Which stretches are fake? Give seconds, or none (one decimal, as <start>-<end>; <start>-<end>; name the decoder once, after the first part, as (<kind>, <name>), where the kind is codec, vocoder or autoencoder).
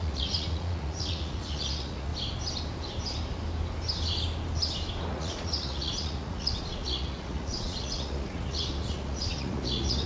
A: 0.0-2.1 (vocoder, Vocos); 5.1-10.1